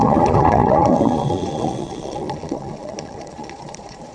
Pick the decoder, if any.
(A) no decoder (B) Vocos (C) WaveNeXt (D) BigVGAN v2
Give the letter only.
B